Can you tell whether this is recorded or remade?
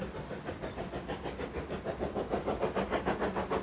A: recorded